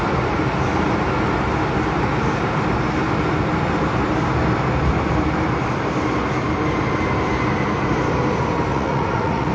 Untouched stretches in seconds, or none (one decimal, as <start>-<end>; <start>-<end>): 0.0-8.7